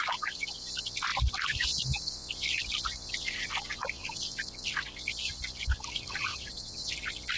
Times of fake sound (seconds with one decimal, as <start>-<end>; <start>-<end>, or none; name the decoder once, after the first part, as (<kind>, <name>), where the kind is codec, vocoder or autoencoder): 6.3-6.9 (vocoder, WaveNeXt)